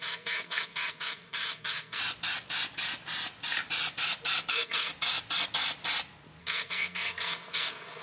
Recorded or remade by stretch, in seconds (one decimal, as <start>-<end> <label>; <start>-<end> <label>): 0.0-2.0 remade; 2.0-4.5 recorded; 4.5-4.9 remade; 4.9-6.4 recorded; 6.4-8.0 remade